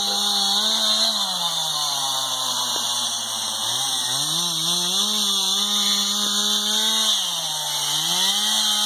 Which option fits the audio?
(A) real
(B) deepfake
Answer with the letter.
A